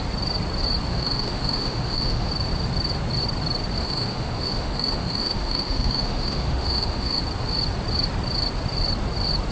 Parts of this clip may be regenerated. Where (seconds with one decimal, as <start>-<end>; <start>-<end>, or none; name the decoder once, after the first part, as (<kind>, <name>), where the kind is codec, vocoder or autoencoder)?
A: 0.9-2.3 (autoencoder, DAC-VAE); 3.8-7.2